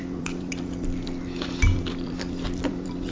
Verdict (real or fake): fake